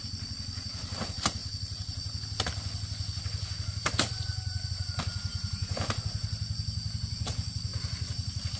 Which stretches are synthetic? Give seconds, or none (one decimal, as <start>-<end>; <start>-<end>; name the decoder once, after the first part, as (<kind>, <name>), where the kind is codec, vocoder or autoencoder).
5.3-6.0 (vocoder, BigVGAN v2)